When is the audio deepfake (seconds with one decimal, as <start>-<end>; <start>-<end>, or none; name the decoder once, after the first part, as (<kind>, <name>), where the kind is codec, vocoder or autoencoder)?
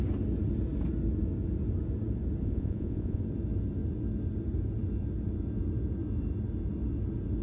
2.4-3.2 (vocoder, Vocos)